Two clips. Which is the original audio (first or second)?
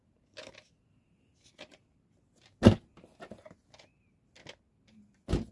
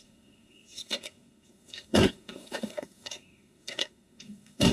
first